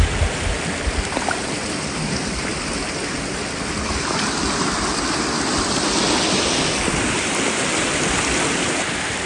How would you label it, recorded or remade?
recorded